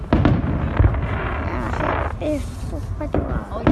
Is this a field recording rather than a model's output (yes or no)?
yes